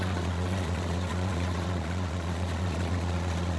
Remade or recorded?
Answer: remade